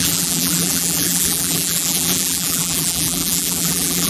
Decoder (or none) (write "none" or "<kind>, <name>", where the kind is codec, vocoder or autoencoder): vocoder, BigVGAN v2